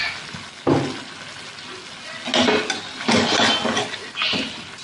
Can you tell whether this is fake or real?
real